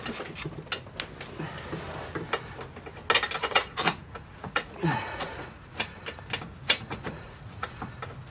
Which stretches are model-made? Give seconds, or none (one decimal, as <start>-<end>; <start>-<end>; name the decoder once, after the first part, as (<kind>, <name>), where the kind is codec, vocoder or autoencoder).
3.4-6.0 (vocoder, Vocos); 6.6-7.8